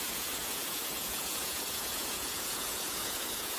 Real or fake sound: fake